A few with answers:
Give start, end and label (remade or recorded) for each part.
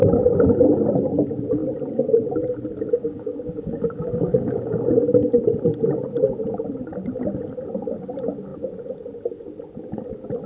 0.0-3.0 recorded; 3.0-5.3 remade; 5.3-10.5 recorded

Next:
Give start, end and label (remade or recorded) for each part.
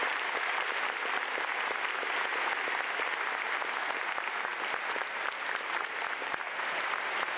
0.0-7.4 recorded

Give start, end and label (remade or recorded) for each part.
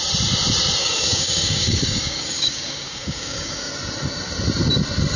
0.0-0.8 recorded; 0.8-3.7 remade; 3.7-5.2 recorded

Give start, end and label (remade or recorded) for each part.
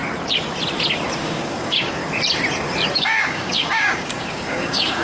0.0-1.2 recorded; 1.2-2.0 remade; 2.0-2.9 recorded; 2.9-5.0 remade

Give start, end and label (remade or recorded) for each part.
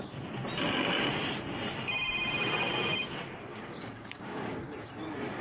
0.0-3.5 recorded; 3.5-4.9 remade; 4.9-5.4 recorded